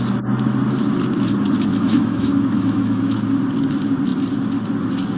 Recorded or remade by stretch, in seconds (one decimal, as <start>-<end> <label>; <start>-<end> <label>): 0.0-1.7 recorded; 1.7-3.2 remade; 3.2-5.2 recorded